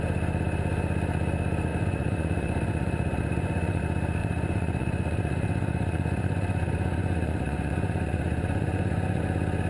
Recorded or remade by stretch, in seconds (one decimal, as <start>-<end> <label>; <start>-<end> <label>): 0.0-1.7 recorded; 1.7-3.8 remade; 3.8-4.2 recorded; 4.2-9.2 remade; 9.2-9.7 recorded